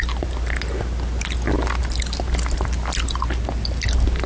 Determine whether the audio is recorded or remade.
recorded